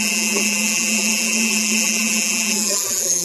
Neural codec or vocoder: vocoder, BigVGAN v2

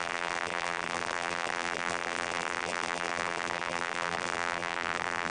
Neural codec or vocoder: vocoder, BigVGAN v2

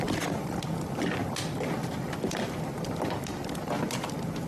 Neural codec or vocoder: vocoder, BigVGAN v2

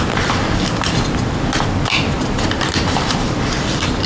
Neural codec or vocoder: vocoder, BigVGAN v2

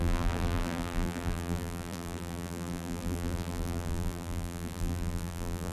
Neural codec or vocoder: vocoder, BigVGAN v2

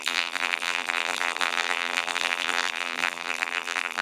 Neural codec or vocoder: vocoder, BigVGAN v2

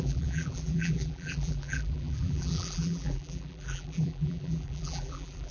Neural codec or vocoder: vocoder, BigVGAN v2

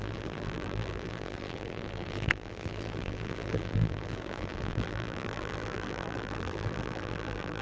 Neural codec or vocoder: vocoder, BigVGAN v2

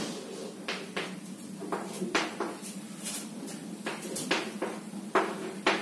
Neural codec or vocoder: none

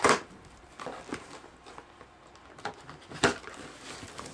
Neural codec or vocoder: none